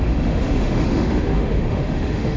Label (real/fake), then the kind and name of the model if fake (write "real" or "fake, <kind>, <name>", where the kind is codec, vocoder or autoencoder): fake, autoencoder, DAC-VAE